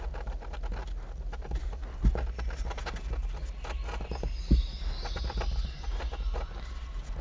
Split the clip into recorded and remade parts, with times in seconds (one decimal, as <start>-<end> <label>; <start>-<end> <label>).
0.0-7.2 recorded

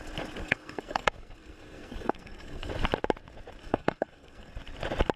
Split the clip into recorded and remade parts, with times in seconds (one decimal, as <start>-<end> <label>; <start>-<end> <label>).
0.0-0.4 recorded; 0.4-2.7 remade; 2.7-3.6 recorded; 3.6-4.5 remade; 4.5-5.2 recorded

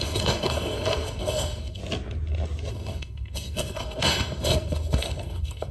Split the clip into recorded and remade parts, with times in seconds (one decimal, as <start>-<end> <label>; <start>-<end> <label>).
0.0-1.8 remade; 1.8-2.7 recorded; 2.7-5.7 remade

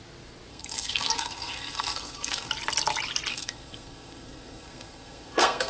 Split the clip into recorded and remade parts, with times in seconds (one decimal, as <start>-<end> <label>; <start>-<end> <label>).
0.0-0.5 recorded; 0.5-2.5 remade; 2.5-3.3 recorded; 3.3-5.7 remade